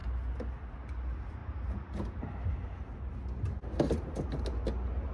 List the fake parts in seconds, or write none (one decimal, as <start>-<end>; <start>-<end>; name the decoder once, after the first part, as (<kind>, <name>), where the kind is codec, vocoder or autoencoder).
none